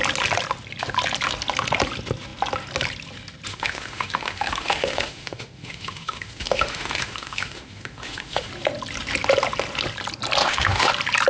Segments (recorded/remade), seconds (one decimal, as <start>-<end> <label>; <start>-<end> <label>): 0.0-3.5 recorded; 3.5-8.5 remade; 8.5-10.4 recorded; 10.4-10.9 remade; 10.9-11.3 recorded